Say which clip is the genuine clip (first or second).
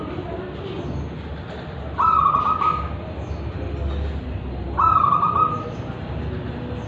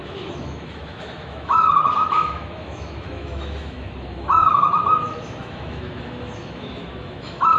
first